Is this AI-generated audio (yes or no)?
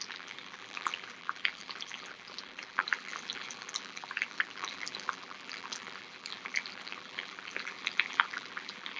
yes